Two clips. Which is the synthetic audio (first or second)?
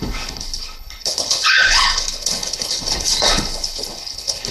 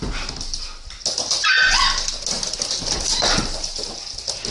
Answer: first